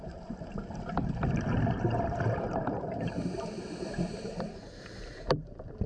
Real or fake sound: fake